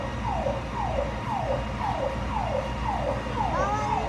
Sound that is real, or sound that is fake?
real